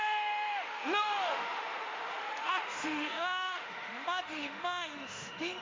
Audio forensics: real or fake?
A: fake